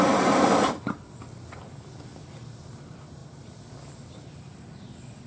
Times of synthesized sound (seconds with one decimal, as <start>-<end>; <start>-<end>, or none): none